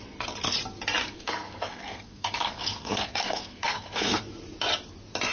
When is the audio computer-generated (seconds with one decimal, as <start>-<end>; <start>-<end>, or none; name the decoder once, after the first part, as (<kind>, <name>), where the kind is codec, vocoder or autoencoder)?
1.0-4.2 (codec, SNAC)